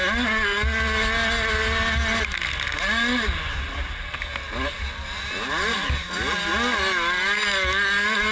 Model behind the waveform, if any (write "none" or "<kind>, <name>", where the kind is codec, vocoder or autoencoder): none